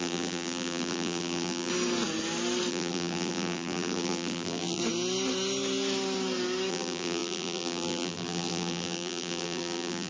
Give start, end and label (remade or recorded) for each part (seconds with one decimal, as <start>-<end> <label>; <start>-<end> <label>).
0.0-1.7 remade; 1.7-2.7 recorded; 2.7-4.8 remade; 4.8-6.7 recorded; 6.7-10.1 remade

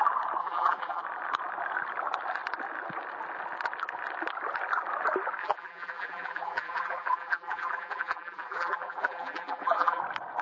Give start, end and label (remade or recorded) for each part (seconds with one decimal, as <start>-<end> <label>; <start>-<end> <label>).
0.0-0.4 recorded; 0.4-1.0 remade; 1.0-5.4 recorded; 5.4-10.0 remade; 10.0-10.4 recorded

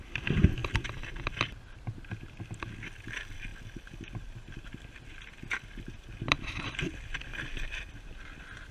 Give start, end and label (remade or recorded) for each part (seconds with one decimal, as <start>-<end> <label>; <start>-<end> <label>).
0.0-8.7 recorded

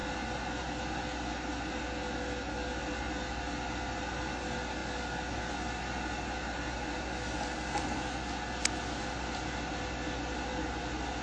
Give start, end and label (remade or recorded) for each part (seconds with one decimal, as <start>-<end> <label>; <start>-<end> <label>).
0.0-11.2 recorded

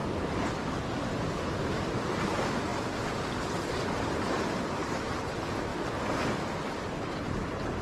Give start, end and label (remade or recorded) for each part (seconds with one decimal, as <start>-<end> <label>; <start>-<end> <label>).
0.0-7.8 recorded

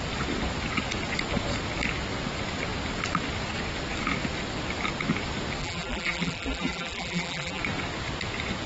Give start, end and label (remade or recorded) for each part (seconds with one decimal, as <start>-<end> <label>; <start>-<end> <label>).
0.0-5.6 recorded; 5.6-7.6 remade; 7.6-8.7 recorded

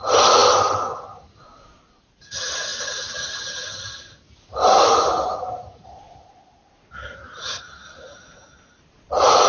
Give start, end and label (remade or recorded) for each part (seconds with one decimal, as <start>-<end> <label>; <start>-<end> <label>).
0.0-0.4 recorded; 0.4-1.0 remade; 1.0-2.7 recorded; 2.7-7.5 remade; 7.5-9.5 recorded